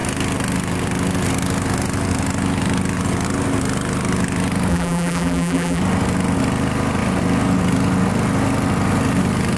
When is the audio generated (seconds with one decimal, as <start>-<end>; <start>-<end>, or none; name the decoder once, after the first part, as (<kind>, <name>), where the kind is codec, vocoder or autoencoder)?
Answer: 4.7-5.8 (vocoder, BigVGAN v2)

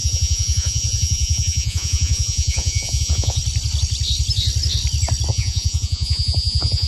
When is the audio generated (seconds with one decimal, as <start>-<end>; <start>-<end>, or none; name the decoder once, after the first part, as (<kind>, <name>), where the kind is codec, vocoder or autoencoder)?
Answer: 0.0-3.4 (vocoder, Vocos); 5.3-6.9

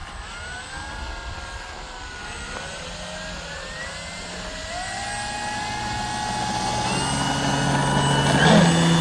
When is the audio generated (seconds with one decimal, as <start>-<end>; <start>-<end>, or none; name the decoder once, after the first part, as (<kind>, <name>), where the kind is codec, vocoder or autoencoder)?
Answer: none

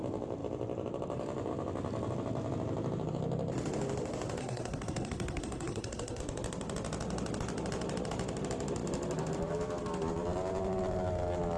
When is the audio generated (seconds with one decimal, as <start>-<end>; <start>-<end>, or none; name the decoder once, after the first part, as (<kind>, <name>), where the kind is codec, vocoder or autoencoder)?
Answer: 4.4-6.2 (codec, SNAC)

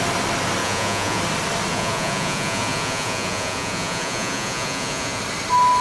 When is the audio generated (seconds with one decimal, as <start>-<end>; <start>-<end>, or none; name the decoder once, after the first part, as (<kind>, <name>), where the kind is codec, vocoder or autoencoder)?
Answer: 0.6-1.2 (vocoder, Vocos); 1.7-5.2